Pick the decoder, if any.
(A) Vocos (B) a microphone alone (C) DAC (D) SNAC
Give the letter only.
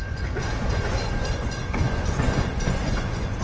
A